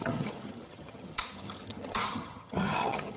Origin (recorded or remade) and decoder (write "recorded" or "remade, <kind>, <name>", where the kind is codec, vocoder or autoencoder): remade, vocoder, HiFi-GAN